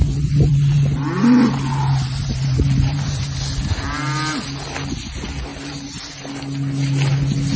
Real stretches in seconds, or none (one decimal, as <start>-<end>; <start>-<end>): 3.4-5.5; 6.3-7.6